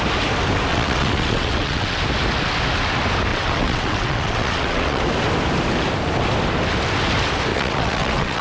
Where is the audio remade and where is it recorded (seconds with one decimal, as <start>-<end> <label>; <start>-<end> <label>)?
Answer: 0.0-0.7 recorded; 0.7-2.0 remade; 2.0-3.3 recorded; 3.3-5.0 remade; 5.0-7.5 recorded; 7.5-8.4 remade